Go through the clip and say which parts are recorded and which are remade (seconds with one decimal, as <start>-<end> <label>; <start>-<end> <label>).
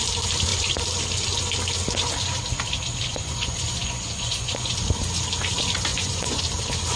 0.0-3.1 recorded; 3.1-4.7 remade; 4.7-5.9 recorded; 5.9-6.4 remade; 6.4-7.0 recorded